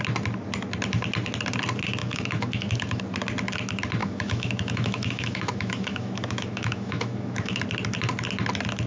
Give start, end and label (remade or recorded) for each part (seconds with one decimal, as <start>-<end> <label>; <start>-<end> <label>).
0.0-2.0 recorded; 2.0-3.0 remade; 3.0-4.0 recorded; 4.0-7.6 remade; 7.6-8.9 recorded